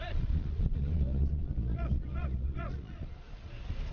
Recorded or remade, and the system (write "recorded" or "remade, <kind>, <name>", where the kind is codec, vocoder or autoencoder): remade, vocoder, Vocos